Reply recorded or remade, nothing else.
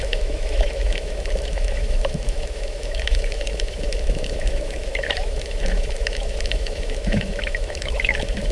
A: remade